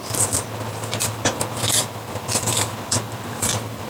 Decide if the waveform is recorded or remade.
recorded